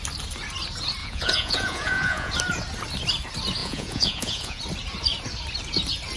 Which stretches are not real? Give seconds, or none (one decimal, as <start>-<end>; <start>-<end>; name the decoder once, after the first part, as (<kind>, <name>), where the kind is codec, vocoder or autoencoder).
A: 1.0-2.3 (vocoder, Vocos); 3.6-4.6